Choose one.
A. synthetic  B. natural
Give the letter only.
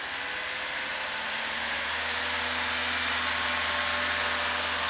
B